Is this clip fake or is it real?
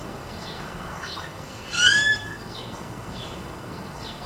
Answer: fake